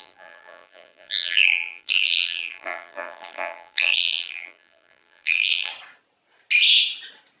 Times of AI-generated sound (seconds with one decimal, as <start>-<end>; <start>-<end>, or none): 0.0-5.7